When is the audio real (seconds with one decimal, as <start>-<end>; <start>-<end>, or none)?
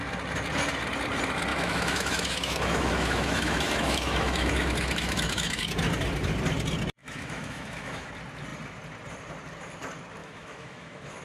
0.0-1.5; 5.6-7.0; 8.1-10.2